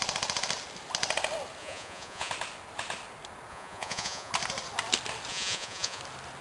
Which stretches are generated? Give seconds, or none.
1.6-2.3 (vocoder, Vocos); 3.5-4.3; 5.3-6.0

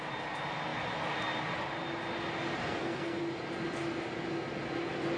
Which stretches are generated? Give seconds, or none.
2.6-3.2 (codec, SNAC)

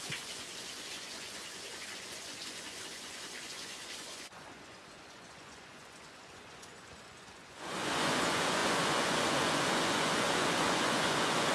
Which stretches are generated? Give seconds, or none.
0.0-11.5 (vocoder, Vocos)

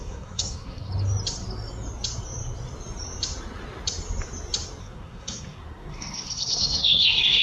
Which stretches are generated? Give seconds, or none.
0.0-0.9 (codec, SNAC); 4.8-7.4

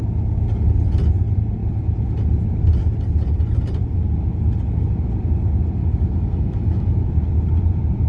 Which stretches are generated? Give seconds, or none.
5.8-7.1 (autoencoder, DAC-VAE)

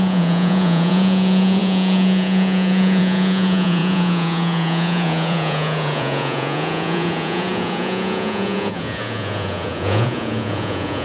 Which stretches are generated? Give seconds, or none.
0.0-11.0 (vocoder, Vocos)